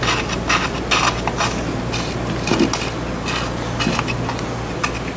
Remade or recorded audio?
recorded